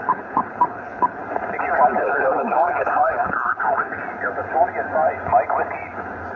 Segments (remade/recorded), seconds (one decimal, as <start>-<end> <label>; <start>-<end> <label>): 0.0-1.2 remade; 1.2-2.0 recorded; 2.0-4.0 remade; 4.0-6.4 recorded